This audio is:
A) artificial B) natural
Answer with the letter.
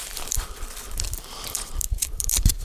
A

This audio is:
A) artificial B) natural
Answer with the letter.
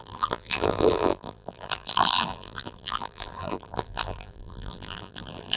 A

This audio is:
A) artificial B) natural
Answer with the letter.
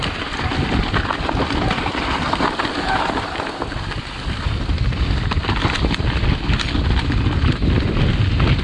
B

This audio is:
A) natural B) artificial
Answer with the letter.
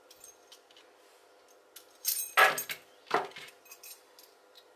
A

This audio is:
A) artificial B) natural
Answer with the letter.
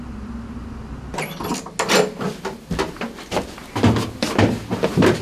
B